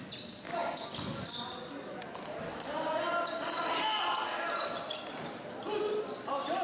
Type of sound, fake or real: real